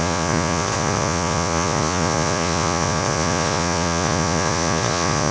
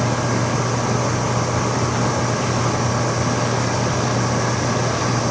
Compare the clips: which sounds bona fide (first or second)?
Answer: second